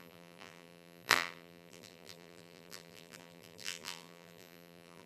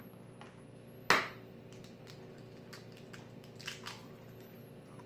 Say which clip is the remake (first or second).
first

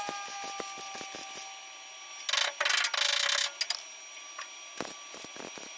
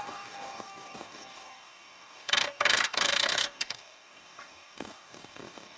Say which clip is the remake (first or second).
second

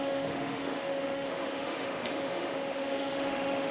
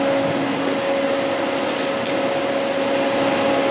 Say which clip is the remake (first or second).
first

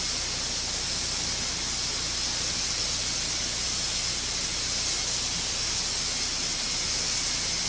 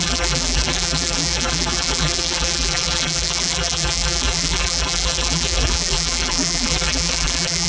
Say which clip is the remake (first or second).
second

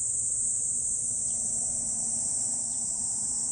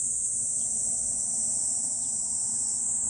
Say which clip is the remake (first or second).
first